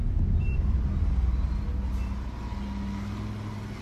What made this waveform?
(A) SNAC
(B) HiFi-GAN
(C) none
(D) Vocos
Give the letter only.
C